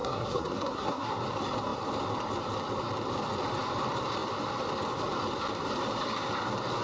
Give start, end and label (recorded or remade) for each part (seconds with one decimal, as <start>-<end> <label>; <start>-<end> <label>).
0.0-1.1 remade; 1.1-6.8 recorded